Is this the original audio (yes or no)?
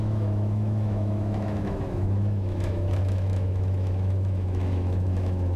no